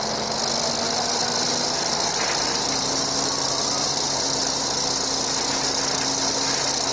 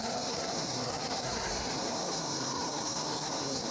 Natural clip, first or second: first